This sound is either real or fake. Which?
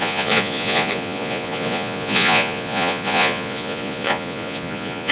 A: fake